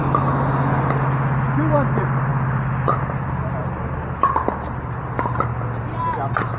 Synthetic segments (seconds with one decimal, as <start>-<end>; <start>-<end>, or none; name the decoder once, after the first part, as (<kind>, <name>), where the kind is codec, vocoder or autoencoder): none